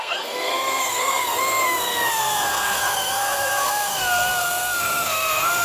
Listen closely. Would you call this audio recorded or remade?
remade